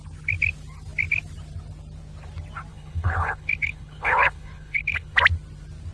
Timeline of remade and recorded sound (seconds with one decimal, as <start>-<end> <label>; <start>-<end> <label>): 0.0-2.7 recorded; 2.7-5.2 remade; 5.2-5.9 recorded